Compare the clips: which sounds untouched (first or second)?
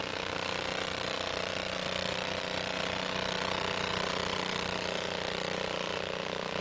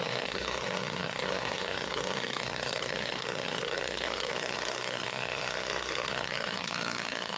first